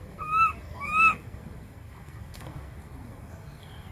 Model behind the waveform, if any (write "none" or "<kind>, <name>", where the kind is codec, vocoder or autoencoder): codec, SNAC